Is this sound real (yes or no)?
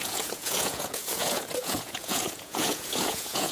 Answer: no